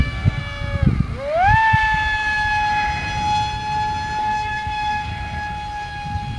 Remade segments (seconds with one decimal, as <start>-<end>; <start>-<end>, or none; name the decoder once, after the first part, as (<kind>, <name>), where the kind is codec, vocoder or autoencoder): 0.0-0.4 (codec, SNAC); 4.2-5.1